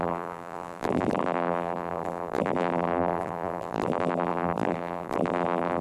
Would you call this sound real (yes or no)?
no